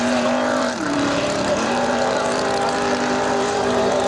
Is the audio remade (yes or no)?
yes